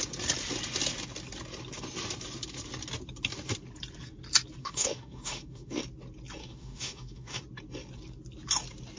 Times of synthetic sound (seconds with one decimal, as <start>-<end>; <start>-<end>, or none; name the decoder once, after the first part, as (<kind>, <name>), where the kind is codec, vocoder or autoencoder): 4.6-5.8 (autoencoder, DAC-VAE); 6.4-7.4

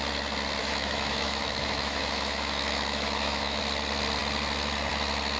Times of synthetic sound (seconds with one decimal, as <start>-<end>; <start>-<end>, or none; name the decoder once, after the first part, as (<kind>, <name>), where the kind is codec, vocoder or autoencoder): 0.6-3.6 (autoencoder, DAC-VAE)

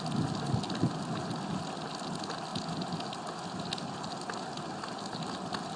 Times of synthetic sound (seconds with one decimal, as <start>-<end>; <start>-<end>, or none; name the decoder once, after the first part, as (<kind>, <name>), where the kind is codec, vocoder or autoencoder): none

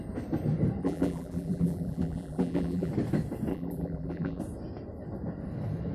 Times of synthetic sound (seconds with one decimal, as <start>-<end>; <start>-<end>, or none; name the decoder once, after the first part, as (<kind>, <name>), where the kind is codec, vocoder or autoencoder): 0.8-2.9 (vocoder, BigVGAN v2); 3.5-4.4

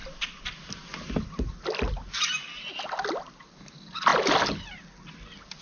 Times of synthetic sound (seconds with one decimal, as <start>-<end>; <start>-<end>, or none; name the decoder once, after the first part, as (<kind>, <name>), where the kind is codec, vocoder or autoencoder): none

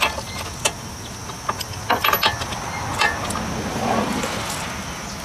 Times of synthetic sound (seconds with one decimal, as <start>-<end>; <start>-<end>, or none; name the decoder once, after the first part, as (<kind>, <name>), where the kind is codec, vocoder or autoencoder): none

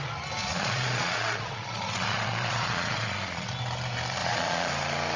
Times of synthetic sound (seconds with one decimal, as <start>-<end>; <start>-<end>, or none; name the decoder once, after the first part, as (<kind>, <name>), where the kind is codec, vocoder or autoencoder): 0.4-3.5 (vocoder, Vocos); 4.2-4.7

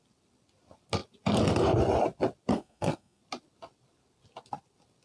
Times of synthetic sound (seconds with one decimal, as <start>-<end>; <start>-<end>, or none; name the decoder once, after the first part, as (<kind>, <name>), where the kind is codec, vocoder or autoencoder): 2.5-3.2 (codec, SNAC)